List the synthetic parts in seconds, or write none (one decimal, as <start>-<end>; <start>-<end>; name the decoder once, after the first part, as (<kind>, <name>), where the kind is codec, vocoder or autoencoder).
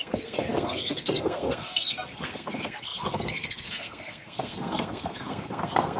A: 0.0-6.0 (codec, SNAC)